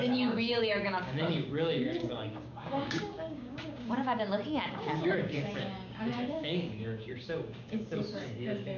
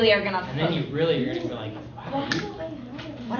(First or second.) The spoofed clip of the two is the first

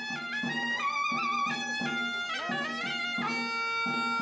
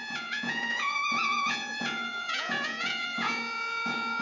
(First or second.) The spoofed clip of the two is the second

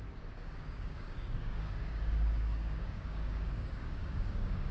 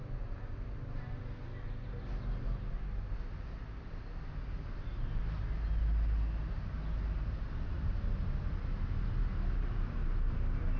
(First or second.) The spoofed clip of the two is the first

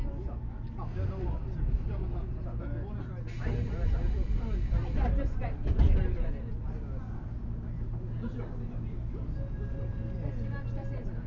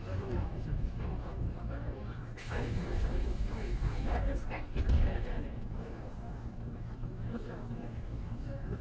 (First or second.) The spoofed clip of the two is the second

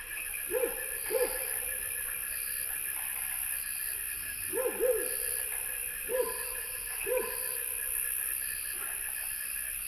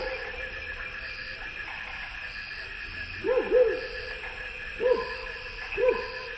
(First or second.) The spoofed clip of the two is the first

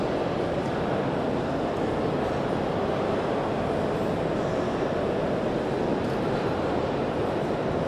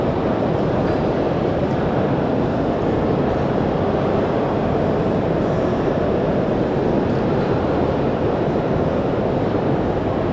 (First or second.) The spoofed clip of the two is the second